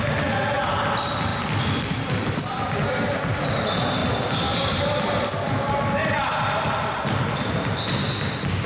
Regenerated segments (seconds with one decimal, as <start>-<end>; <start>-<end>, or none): 1.3-2.5; 4.0-5.5; 6.0-7.3